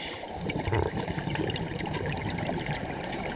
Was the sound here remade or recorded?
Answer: remade